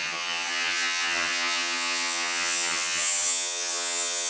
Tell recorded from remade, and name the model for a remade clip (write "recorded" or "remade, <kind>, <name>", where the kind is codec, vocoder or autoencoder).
remade, vocoder, HiFi-GAN